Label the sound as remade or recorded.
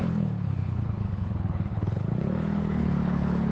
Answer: remade